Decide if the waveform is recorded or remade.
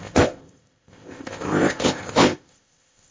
remade